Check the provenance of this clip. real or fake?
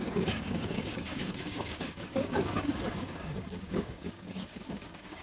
fake